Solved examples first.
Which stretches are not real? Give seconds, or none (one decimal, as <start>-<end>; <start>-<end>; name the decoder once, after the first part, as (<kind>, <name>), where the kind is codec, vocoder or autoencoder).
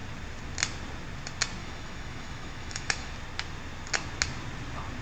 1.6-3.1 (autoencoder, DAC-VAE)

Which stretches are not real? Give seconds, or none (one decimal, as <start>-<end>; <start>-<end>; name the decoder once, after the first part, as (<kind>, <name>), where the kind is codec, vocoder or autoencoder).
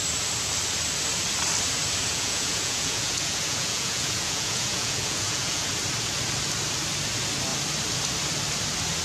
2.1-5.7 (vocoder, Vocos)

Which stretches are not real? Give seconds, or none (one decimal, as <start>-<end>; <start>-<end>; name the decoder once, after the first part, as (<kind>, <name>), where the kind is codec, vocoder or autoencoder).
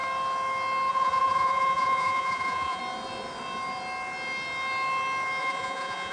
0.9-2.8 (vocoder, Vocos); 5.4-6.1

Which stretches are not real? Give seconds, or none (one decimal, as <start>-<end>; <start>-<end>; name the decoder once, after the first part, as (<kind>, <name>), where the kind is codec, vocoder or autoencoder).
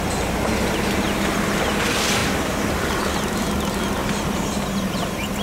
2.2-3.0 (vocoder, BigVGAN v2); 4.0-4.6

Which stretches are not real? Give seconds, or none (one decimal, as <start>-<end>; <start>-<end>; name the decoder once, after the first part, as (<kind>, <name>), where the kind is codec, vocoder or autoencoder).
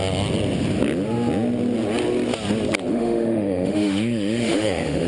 2.9-5.1 (autoencoder, DAC-VAE)